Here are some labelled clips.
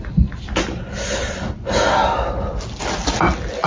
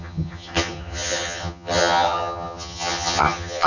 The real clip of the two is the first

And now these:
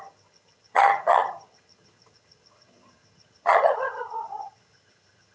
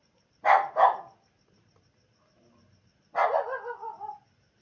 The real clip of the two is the second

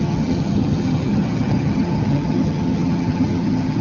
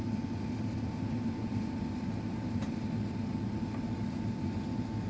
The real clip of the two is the second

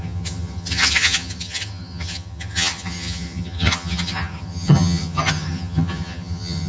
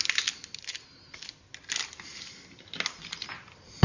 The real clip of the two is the second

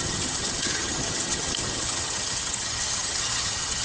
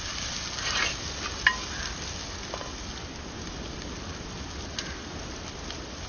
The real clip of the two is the second